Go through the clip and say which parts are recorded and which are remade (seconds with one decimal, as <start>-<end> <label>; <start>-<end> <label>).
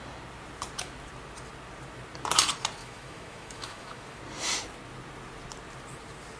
0.0-2.8 recorded; 2.8-4.2 remade; 4.2-6.4 recorded